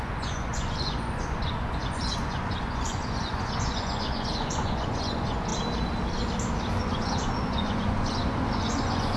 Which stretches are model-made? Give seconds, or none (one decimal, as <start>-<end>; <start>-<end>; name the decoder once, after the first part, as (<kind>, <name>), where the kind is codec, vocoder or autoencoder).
0.0-5.5 (vocoder, Vocos); 6.8-9.2